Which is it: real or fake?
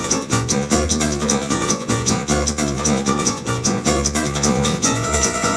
fake